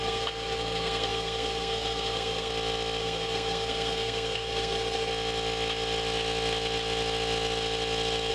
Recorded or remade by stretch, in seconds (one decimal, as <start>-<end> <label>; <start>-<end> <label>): 0.0-2.5 remade; 2.5-3.0 recorded; 3.0-5.1 remade; 5.1-8.3 recorded